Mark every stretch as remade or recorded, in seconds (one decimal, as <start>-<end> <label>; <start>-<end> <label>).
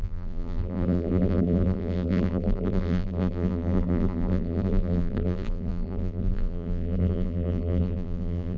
0.0-8.6 remade